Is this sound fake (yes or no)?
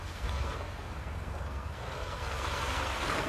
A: yes